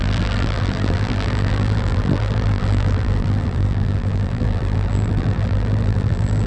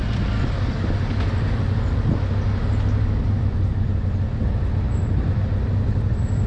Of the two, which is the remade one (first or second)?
first